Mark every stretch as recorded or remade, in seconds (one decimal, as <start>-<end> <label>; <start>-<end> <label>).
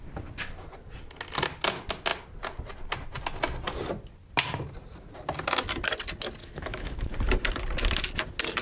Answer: 0.0-6.4 recorded; 6.4-7.1 remade; 7.1-8.6 recorded